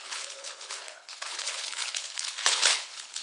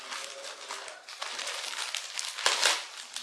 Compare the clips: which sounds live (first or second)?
second